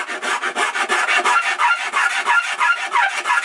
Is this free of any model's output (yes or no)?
yes